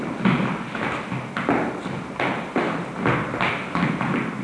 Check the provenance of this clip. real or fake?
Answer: real